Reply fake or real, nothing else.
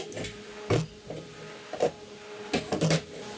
real